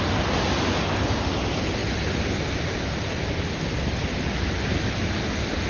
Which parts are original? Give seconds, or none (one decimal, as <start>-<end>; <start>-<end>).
0.0-5.7